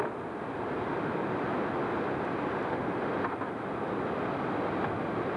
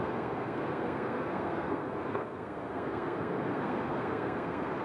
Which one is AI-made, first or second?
second